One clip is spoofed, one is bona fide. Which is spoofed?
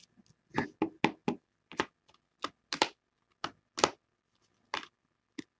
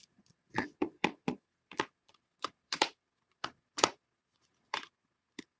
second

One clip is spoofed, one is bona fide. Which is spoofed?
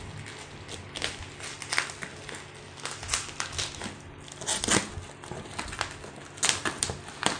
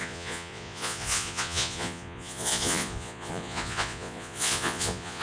second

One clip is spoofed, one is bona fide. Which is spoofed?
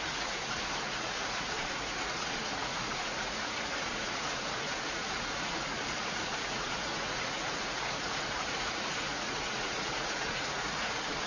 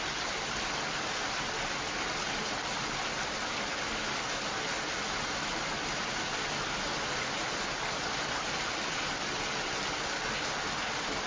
first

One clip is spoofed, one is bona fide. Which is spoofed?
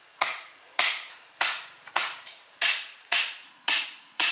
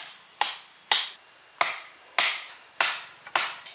first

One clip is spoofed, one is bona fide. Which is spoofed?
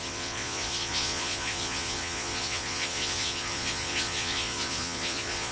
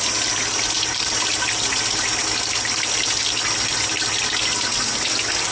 first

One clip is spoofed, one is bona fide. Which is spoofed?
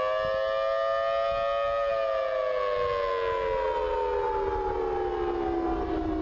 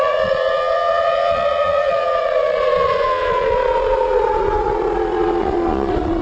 second